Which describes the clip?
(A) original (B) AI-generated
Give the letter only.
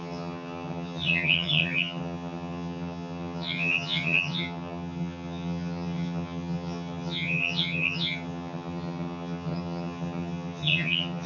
B